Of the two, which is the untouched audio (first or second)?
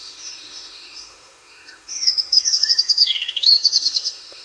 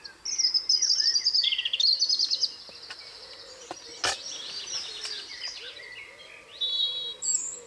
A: second